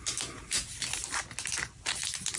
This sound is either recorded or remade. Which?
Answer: recorded